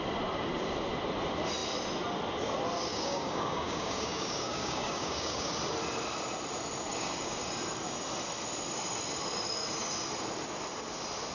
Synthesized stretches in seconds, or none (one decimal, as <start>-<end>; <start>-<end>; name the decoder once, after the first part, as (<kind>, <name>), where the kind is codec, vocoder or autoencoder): 2.9-5.5 (codec, DAC); 6.9-7.5